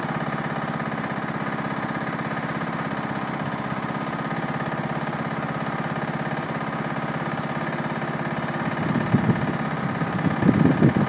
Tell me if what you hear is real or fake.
real